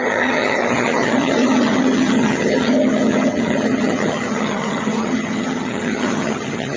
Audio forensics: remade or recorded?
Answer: remade